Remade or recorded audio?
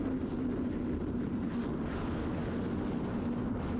recorded